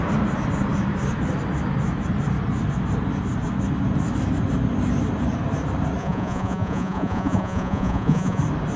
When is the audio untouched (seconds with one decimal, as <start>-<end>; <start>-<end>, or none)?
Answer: 0.0-6.0; 8.4-8.8